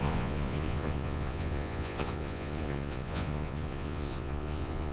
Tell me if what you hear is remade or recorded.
remade